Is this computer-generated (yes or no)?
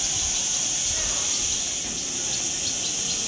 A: no